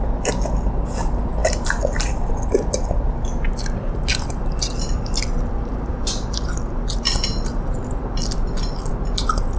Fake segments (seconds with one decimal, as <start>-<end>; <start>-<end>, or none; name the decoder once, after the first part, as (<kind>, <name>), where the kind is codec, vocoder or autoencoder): 1.4-2.7 (vocoder, BigVGAN v2); 4.1-8.9